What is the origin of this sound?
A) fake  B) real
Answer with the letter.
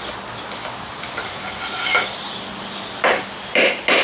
B